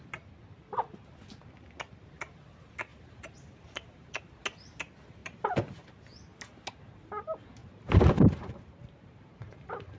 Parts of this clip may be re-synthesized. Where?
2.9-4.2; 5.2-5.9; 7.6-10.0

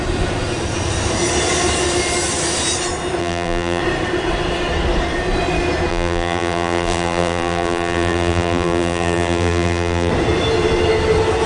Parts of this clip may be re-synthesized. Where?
3.2-3.8; 5.9-10.1

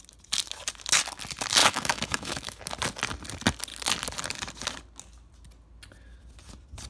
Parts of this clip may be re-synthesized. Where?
1.6-2.6

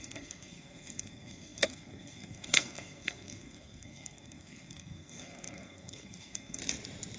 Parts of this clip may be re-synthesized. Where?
0.0-6.6